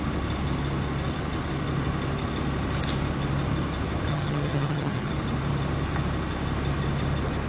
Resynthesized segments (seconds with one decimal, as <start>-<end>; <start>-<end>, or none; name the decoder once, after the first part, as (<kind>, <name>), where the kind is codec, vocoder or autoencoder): 4.1-5.1 (vocoder, HiFi-GAN)